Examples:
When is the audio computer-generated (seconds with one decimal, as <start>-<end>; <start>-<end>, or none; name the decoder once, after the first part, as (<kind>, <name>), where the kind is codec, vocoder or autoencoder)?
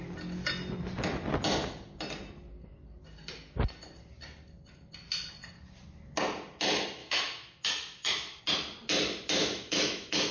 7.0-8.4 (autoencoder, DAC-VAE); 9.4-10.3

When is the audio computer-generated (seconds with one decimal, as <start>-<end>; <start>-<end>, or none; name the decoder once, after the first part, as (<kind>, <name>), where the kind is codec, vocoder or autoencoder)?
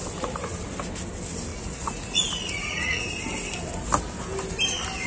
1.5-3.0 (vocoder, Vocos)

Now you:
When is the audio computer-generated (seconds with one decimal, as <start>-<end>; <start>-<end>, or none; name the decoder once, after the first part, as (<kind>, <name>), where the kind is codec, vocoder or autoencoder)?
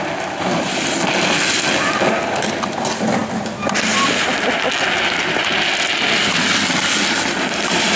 3.2-4.0 (vocoder, BigVGAN v2)